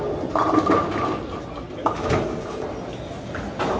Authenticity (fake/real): real